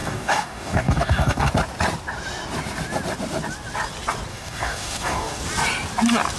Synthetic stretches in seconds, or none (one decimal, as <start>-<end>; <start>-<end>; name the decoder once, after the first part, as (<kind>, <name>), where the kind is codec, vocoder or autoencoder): 0.0-1.5 (codec, DAC); 4.3-5.4